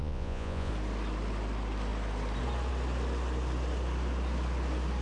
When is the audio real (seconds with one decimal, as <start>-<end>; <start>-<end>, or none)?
0.7-5.0